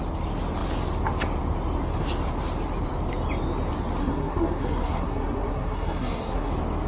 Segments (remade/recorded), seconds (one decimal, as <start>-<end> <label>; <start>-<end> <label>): 0.0-4.0 recorded; 4.0-6.5 remade; 6.5-6.9 recorded